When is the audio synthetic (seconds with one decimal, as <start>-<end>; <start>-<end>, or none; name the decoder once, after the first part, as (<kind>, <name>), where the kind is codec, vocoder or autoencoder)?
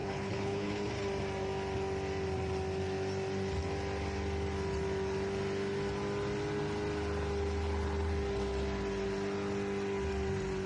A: 0.0-0.9 (codec, HILCodec)